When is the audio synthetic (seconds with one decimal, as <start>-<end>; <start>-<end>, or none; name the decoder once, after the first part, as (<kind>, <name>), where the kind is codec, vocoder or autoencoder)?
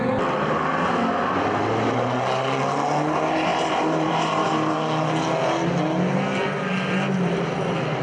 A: 3.5-4.5 (vocoder, BigVGAN v2)